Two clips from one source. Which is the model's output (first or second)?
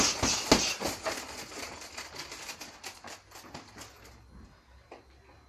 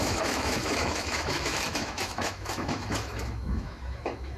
second